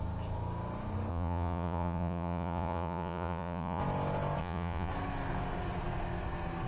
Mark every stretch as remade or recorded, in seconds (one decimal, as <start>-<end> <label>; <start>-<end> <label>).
0.0-1.1 recorded; 1.1-3.8 remade; 3.8-4.4 recorded; 4.4-4.9 remade; 4.9-6.7 recorded

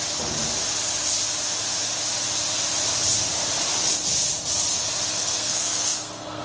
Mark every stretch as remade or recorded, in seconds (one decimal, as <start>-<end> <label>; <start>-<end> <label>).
0.0-5.1 recorded; 5.1-6.4 remade